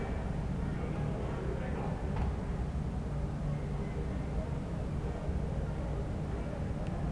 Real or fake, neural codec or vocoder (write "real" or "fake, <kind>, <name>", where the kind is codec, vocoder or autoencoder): real